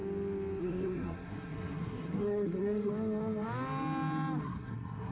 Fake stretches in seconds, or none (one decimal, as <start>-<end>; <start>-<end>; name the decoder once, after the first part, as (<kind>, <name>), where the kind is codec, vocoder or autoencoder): 0.6-2.9 (codec, SNAC); 4.4-5.1